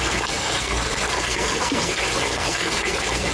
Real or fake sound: fake